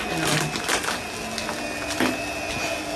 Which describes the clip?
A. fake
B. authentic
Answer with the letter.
B